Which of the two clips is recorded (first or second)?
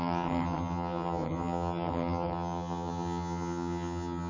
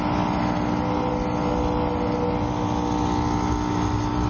second